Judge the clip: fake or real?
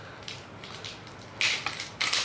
real